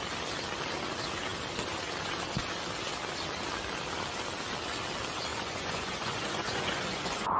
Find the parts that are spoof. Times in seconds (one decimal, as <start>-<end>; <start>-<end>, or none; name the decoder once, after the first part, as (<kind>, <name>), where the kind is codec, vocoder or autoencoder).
5.3-7.4 (vocoder, Vocos)